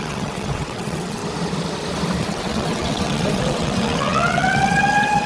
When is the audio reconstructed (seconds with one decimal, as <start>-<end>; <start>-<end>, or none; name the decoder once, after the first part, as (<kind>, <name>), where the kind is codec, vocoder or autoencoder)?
0.0-1.2 (vocoder, WaveNeXt); 2.2-5.3

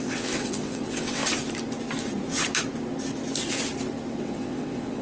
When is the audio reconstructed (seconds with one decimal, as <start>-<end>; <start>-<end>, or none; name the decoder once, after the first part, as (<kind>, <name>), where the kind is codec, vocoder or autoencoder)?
0.0-1.2 (vocoder, WaveNeXt); 4.2-5.0

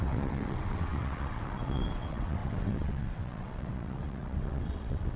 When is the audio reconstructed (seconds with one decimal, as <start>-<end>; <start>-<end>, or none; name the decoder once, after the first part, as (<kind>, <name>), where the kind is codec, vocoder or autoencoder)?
0.0-5.2 (vocoder, WaveNeXt)

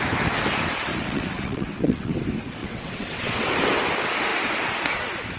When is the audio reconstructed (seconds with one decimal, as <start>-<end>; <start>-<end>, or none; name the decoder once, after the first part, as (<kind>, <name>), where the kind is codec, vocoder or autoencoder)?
0.9-2.1 (vocoder, WaveNeXt); 2.6-3.4

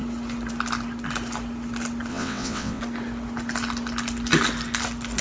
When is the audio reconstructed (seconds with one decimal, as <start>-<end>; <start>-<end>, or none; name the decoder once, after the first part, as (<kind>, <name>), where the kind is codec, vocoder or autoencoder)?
2.1-2.8 (vocoder, WaveNeXt)

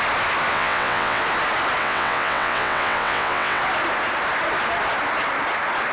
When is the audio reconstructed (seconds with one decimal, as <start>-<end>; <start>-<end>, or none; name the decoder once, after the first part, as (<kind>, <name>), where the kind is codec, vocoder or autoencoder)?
0.5-1.2 (vocoder, WaveNeXt); 1.8-3.6

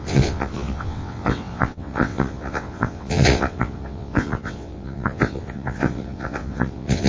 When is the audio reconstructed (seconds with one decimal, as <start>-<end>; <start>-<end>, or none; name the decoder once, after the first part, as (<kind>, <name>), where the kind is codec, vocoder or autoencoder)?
0.0-7.1 (vocoder, WaveNeXt)

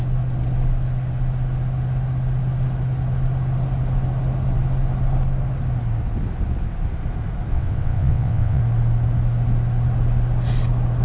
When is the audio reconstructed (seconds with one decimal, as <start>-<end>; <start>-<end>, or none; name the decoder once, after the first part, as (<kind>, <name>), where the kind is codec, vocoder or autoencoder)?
7.5-8.6 (vocoder, WaveNeXt)